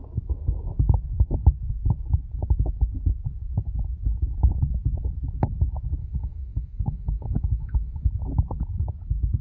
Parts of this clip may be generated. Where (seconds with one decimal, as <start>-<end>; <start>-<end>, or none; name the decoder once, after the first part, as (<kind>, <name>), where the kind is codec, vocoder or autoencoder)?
6.0-8.1 (autoencoder, DAC-VAE)